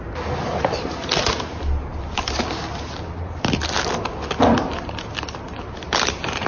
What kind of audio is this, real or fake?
real